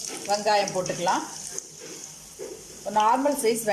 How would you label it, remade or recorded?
recorded